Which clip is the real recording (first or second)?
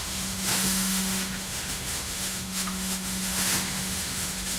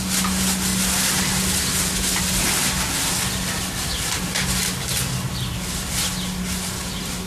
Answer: second